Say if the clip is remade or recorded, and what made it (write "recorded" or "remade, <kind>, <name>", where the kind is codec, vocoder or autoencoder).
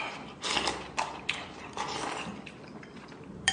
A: remade, vocoder, BigVGAN v2